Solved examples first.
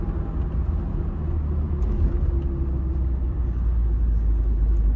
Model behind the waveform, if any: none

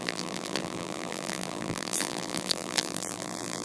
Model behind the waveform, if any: vocoder, BigVGAN v2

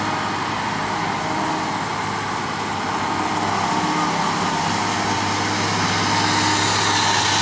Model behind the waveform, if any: none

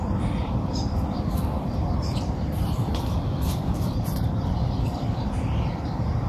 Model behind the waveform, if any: vocoder, BigVGAN v2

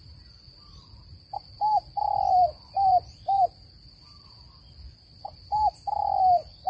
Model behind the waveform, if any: vocoder, BigVGAN v2